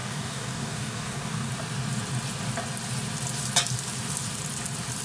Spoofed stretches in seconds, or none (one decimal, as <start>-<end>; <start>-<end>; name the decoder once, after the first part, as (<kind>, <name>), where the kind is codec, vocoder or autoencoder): 0.0-1.5 (codec, DAC)